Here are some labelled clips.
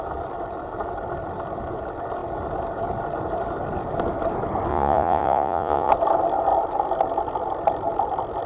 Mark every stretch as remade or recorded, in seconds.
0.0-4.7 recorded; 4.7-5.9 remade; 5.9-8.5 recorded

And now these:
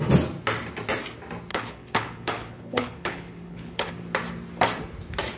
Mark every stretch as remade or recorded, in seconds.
0.0-1.5 recorded; 1.5-3.9 remade; 3.9-5.4 recorded

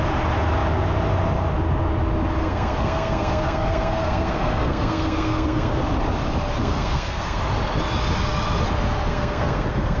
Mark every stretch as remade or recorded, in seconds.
0.0-2.4 recorded; 2.4-5.8 remade; 5.8-6.6 recorded; 6.6-7.4 remade; 7.4-9.1 recorded; 9.1-10.0 remade